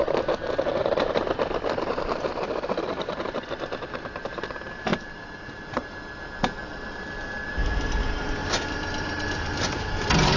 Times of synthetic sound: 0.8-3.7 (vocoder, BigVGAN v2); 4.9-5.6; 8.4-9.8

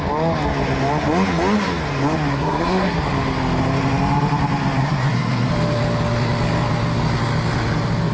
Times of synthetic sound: 2.3-3.0 (codec, SNAC); 4.8-5.5

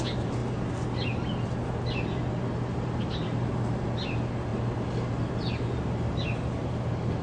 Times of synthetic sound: none

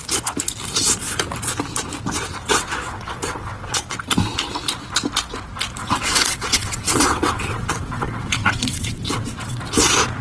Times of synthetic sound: 2.4-3.8 (vocoder, WaveNeXt); 5.8-9.6